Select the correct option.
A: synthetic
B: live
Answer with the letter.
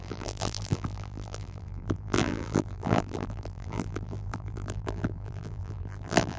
A